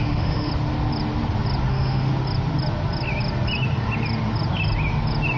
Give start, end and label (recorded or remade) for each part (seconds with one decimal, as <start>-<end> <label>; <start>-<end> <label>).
0.0-0.5 remade; 0.5-1.7 recorded; 1.7-2.1 remade; 2.1-5.4 recorded

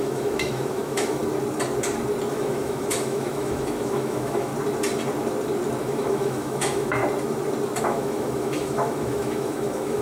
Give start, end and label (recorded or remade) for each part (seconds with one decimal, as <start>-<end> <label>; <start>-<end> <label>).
0.0-1.2 remade; 1.2-2.3 recorded; 2.3-4.5 remade; 4.5-5.8 recorded; 5.8-7.0 remade; 7.0-7.8 recorded; 7.8-10.0 remade

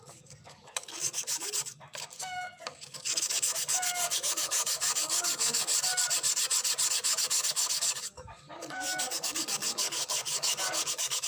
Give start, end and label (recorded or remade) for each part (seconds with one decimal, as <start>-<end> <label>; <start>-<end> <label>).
0.0-5.7 remade; 5.7-6.9 recorded; 6.9-11.3 remade

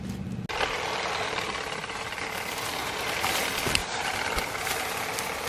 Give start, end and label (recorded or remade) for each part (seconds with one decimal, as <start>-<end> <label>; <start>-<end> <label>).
0.0-2.8 recorded; 2.8-3.3 remade; 3.3-5.5 recorded